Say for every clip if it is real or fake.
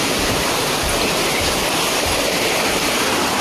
real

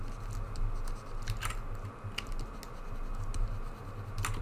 real